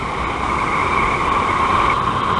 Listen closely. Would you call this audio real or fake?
real